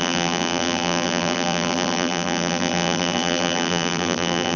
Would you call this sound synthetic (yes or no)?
yes